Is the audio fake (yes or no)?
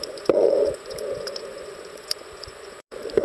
yes